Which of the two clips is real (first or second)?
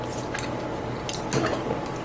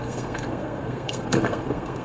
first